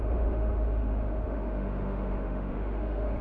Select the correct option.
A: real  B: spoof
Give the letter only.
B